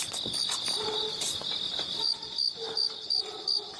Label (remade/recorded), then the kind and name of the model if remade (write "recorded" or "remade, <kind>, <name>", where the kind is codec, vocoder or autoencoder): recorded